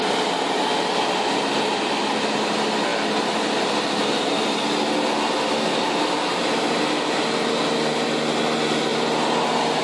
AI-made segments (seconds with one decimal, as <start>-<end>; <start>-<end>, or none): none